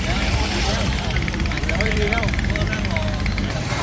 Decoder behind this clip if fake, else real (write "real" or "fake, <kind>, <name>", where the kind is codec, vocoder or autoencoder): fake, vocoder, BigVGAN v2